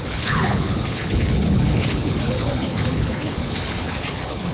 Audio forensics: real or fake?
fake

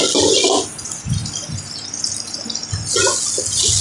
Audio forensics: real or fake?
real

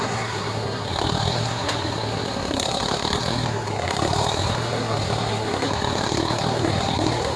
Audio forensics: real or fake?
fake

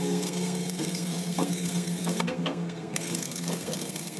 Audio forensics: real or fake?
fake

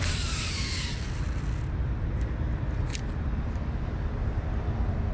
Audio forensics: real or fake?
real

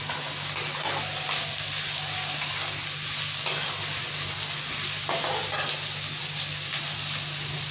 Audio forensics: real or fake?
real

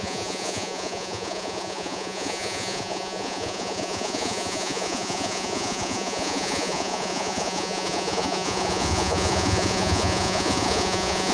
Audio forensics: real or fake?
fake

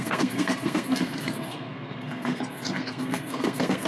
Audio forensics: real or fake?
fake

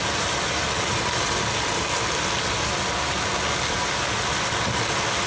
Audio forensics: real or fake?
real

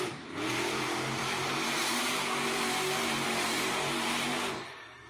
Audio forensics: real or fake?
fake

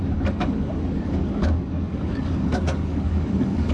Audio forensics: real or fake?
fake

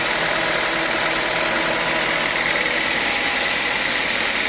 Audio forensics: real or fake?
real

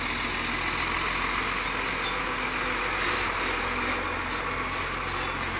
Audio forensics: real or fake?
real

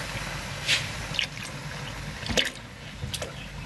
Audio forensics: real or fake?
real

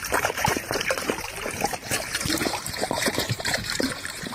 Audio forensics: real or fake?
fake